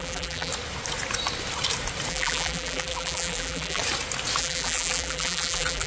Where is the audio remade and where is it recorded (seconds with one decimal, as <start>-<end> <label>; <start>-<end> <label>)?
0.0-0.5 remade; 0.5-2.1 recorded; 2.1-3.8 remade; 3.8-4.4 recorded; 4.4-5.9 remade